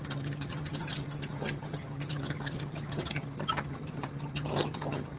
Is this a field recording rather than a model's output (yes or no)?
no